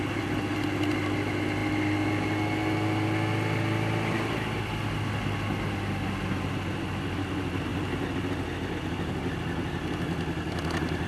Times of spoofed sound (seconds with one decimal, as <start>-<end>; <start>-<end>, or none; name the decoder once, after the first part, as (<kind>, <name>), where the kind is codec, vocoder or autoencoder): none